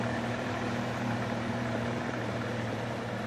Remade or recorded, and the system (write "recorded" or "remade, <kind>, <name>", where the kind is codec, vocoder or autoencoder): remade, vocoder, BigVGAN v2